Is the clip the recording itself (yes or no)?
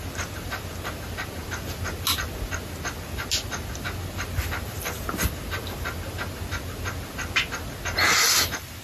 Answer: yes